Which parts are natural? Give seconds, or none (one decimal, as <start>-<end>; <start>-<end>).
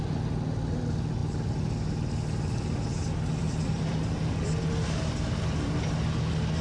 0.0-6.6